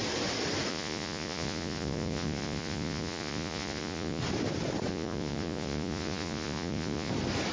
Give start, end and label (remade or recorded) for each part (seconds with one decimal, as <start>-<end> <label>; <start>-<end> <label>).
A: 0.0-0.7 recorded; 0.7-4.2 remade; 4.2-4.9 recorded; 4.9-7.1 remade; 7.1-7.5 recorded